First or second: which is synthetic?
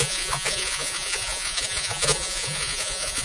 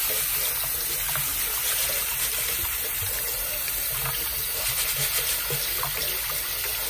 first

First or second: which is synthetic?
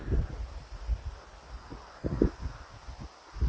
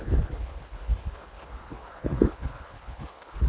second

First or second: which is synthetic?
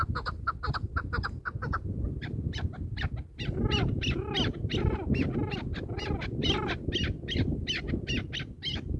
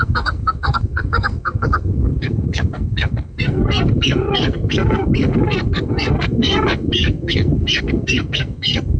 second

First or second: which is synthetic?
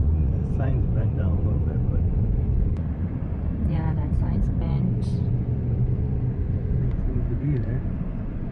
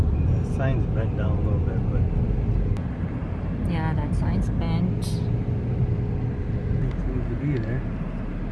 first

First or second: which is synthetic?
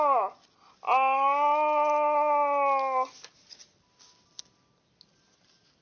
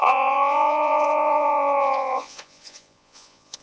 second